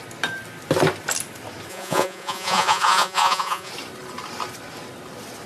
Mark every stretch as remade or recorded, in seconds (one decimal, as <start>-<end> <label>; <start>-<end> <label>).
0.0-1.7 recorded; 1.7-3.7 remade; 3.7-5.5 recorded